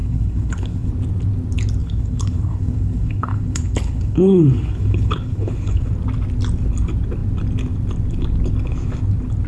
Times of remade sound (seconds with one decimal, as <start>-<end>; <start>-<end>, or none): 0.0-0.9; 1.8-5.9